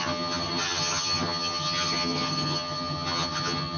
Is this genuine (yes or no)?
no